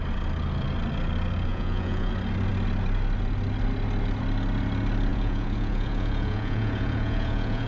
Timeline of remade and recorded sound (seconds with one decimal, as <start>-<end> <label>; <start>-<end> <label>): 0.0-1.5 recorded; 1.5-2.1 remade; 2.1-5.1 recorded; 5.1-7.7 remade